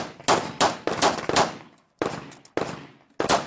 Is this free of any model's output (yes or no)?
yes